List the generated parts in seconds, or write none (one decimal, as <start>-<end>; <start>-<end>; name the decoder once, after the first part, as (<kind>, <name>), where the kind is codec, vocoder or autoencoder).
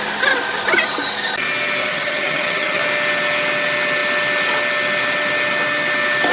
1.8-2.8 (vocoder, HiFi-GAN)